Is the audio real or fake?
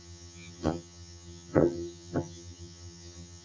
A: fake